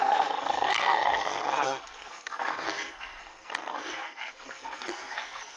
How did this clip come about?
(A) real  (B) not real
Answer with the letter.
B